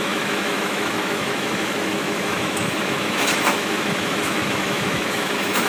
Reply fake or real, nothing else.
fake